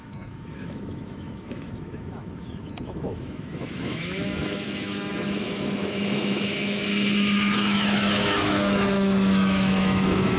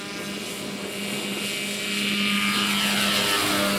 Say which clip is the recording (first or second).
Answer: second